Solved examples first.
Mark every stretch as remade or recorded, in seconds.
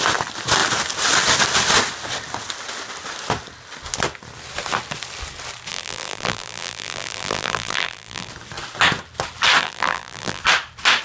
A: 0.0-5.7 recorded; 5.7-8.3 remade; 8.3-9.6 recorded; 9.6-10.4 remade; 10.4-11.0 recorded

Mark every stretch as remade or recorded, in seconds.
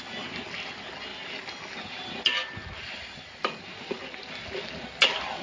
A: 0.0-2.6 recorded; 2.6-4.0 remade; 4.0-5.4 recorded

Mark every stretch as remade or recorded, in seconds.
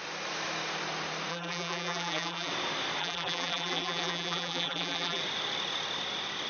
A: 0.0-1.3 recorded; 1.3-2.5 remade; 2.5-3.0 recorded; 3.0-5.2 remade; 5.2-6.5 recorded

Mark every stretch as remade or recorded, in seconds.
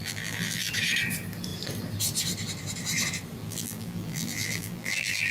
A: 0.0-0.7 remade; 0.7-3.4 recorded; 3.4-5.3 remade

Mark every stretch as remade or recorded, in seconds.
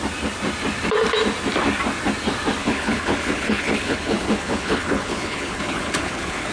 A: 0.0-2.6 recorded; 2.6-6.5 remade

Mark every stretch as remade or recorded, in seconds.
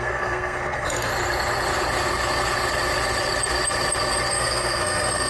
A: 0.0-1.1 remade; 1.1-4.3 recorded; 4.3-5.3 remade